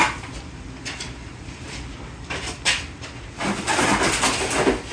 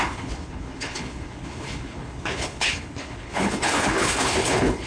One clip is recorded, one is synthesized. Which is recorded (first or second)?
first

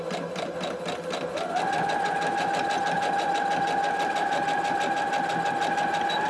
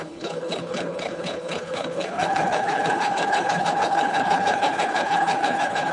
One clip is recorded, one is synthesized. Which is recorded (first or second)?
first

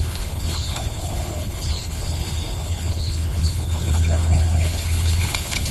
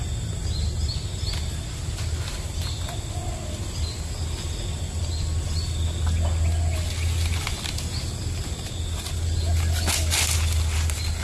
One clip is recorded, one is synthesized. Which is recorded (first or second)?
second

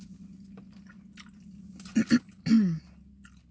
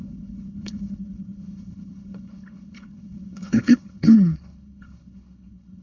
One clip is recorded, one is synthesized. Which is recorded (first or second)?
first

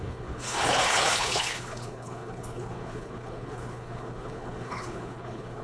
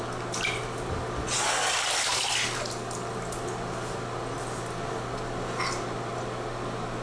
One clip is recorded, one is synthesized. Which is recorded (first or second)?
second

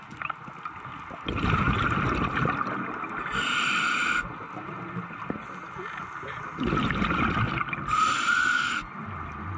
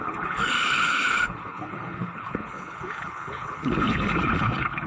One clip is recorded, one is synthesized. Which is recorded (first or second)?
first